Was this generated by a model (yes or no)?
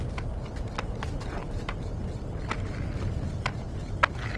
no